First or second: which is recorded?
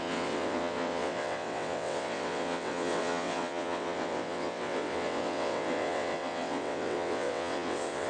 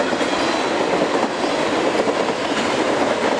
second